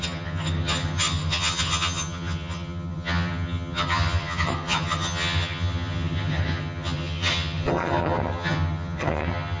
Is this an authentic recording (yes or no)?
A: no